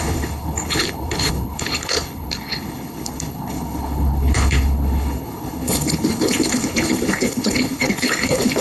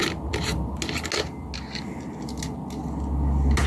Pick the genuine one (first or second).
second